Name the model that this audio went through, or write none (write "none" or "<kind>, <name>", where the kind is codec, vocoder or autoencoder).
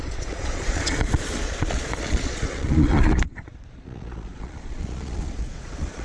vocoder, Vocos